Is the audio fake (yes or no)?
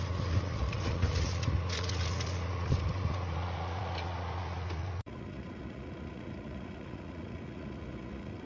yes